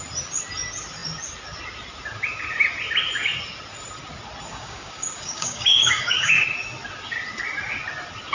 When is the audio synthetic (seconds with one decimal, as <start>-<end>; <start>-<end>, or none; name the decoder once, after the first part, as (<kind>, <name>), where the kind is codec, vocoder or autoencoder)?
4.5-6.3 (codec, DAC)